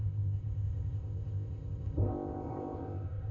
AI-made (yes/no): yes